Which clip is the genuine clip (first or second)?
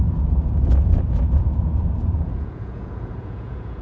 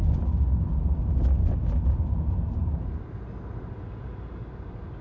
second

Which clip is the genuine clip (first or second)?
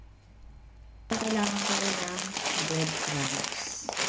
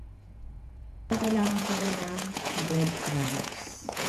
first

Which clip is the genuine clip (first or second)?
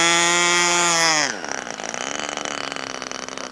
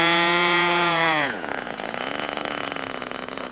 first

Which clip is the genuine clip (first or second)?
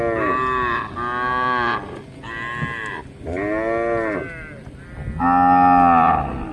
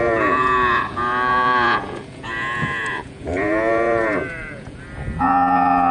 first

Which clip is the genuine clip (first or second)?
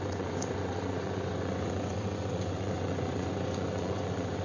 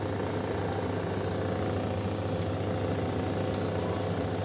second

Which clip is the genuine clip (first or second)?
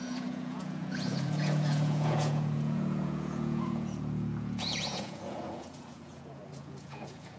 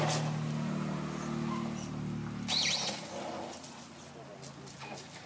second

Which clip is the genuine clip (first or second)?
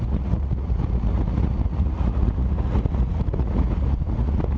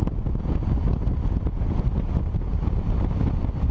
second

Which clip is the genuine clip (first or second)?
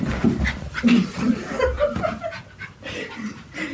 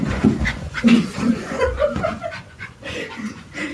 first